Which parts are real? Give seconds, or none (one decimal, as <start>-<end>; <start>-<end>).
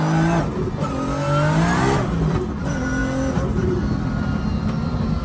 0.0-5.2